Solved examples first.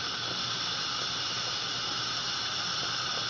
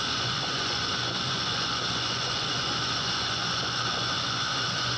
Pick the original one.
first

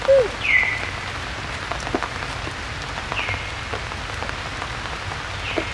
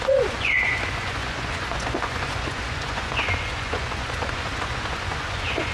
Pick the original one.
first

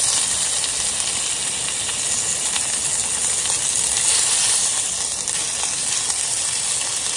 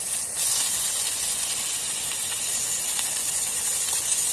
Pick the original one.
first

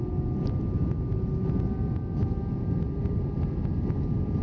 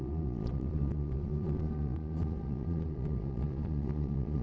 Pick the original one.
first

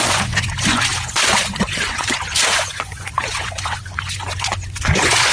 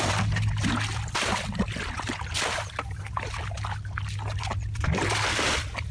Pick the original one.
second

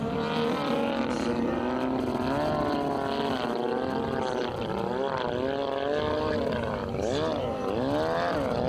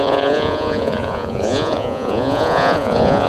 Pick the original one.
first